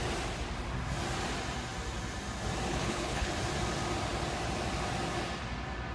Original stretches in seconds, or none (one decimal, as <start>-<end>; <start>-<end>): 0.0-2.7; 3.3-5.9

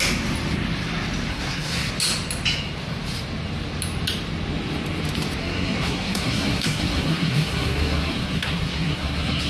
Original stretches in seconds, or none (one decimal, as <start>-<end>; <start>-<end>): 0.0-1.3; 1.9-5.4

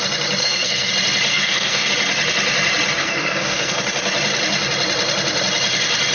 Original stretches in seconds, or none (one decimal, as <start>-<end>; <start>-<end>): 0.0-0.4; 0.9-1.3; 1.9-3.0; 3.8-6.1

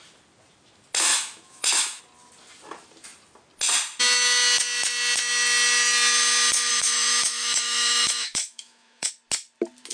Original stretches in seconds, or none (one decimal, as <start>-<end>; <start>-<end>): 0.0-1.1; 2.0-6.7; 9.1-9.9

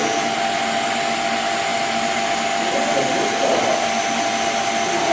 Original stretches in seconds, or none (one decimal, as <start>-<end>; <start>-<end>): 0.0-5.1

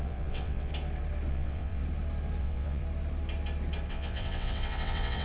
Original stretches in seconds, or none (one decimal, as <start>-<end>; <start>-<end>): 0.7-1.3; 1.8-2.4; 2.8-3.9